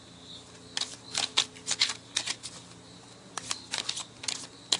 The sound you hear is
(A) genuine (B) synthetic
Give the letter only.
A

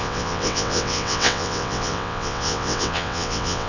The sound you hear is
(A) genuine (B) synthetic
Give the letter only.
B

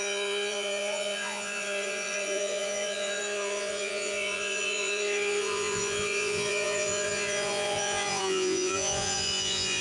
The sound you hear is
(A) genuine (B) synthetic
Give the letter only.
B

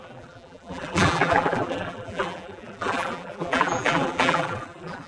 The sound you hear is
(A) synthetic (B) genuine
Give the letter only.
A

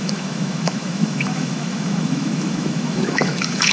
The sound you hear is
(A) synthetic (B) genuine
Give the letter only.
A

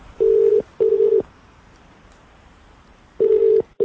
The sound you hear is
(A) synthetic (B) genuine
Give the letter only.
A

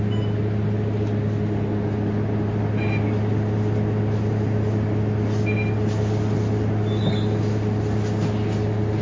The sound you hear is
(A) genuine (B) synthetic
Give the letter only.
A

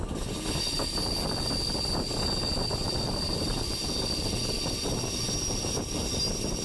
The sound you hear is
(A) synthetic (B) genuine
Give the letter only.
B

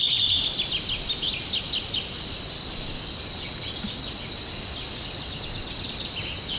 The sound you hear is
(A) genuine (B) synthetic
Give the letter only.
A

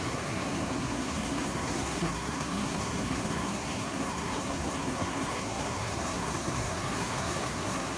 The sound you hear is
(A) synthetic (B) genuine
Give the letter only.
A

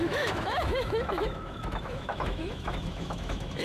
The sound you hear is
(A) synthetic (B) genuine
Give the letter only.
A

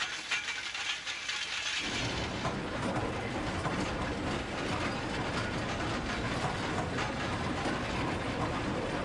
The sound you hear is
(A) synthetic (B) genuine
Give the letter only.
B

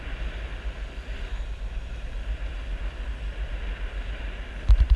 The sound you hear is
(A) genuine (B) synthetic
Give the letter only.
A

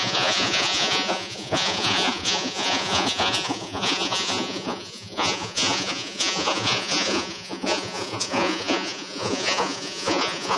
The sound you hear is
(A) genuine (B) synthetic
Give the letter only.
B